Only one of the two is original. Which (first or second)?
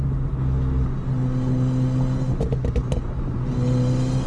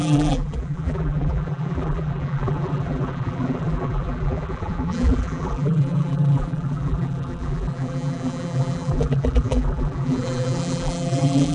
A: first